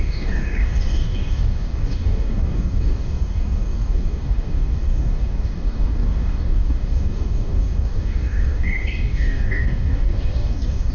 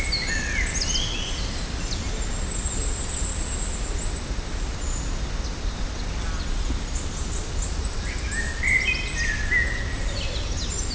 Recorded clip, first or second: second